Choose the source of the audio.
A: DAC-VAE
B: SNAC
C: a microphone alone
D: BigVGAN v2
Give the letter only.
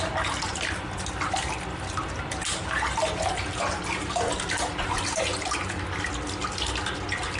C